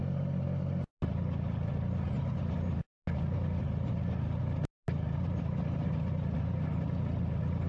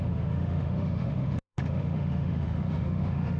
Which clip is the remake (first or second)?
second